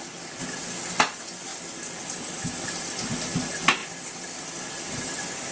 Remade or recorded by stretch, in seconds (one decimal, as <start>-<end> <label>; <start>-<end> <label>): 0.0-5.5 recorded